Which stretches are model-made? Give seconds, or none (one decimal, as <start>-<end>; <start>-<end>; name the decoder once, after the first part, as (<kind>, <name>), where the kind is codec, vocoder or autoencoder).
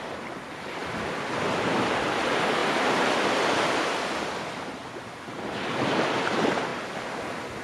0.0-0.8 (vocoder, BigVGAN v2); 2.2-2.6; 3.8-6.7